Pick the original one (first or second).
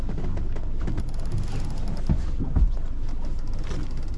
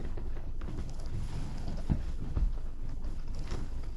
first